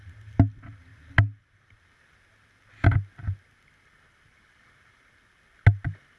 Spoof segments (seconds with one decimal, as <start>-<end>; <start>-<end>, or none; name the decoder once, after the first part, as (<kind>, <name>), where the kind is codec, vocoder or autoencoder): none